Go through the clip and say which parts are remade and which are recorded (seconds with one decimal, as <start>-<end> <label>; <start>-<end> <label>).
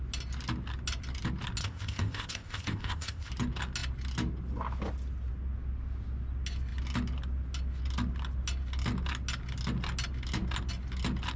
0.0-1.6 recorded; 1.6-3.3 remade; 3.3-11.4 recorded